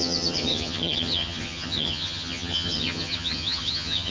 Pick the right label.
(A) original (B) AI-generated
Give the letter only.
B